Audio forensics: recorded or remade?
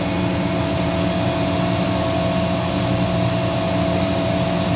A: recorded